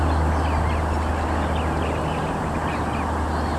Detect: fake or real real